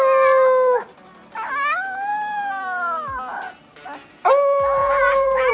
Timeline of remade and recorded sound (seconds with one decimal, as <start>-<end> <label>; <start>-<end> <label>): 0.0-4.8 recorded; 4.8-5.5 remade